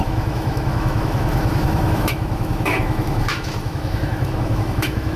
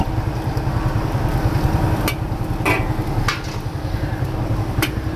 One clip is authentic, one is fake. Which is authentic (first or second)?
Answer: second